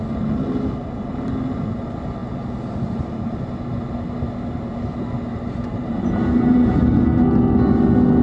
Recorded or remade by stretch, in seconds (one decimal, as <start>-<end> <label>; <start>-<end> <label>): 0.0-5.7 recorded; 5.7-6.8 remade; 6.8-8.2 recorded

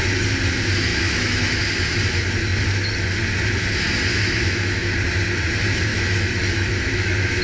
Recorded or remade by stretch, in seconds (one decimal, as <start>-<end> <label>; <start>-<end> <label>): 0.0-0.9 recorded; 0.9-1.5 remade; 1.5-4.1 recorded; 4.1-4.9 remade; 4.9-5.9 recorded; 5.9-7.4 remade

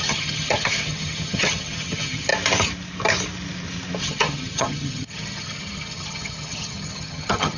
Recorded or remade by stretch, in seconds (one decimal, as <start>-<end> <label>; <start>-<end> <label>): 0.0-2.3 remade; 2.3-4.0 recorded; 4.0-7.6 remade

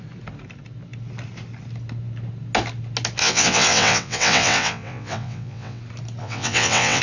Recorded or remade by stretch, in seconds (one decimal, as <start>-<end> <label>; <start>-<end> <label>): 0.0-3.2 recorded; 3.2-5.8 remade; 5.8-6.2 recorded; 6.2-7.0 remade

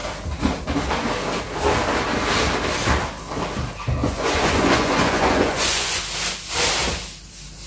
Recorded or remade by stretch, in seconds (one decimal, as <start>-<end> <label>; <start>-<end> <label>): 0.0-4.0 recorded; 4.0-6.0 remade; 6.0-7.7 recorded

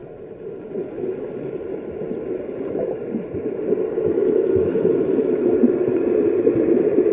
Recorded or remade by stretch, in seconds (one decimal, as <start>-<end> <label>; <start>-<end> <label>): 0.0-4.2 recorded; 4.2-7.1 remade

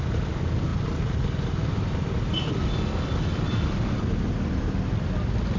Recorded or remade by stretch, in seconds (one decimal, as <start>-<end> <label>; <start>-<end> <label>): 0.0-5.6 recorded

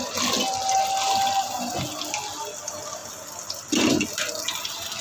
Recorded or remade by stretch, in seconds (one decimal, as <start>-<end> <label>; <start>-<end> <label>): 0.0-5.0 recorded